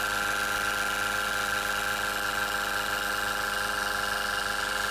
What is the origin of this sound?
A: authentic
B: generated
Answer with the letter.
A